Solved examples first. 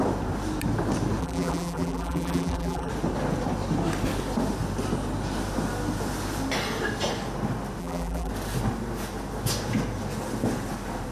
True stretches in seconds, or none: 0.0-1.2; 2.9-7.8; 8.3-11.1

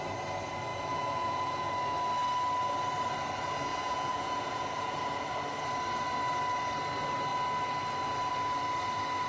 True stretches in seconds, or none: 0.0-0.7; 1.7-3.7; 5.3-9.3

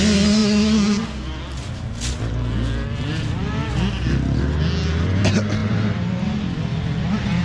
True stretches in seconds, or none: 0.0-7.4

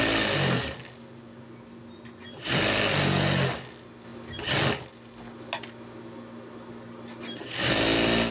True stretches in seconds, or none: 0.0-8.3

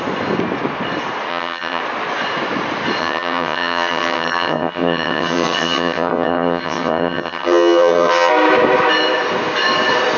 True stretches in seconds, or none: 0.0-1.3; 1.8-3.0; 8.3-10.2

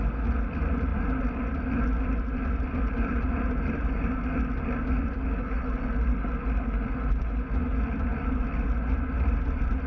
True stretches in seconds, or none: 0.0-9.9

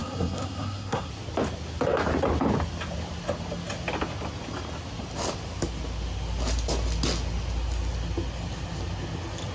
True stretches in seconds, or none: 1.1-9.5